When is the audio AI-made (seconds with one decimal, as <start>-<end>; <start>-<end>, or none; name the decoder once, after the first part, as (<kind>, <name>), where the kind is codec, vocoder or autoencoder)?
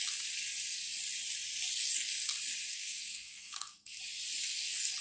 2.7-4.0 (codec, SNAC)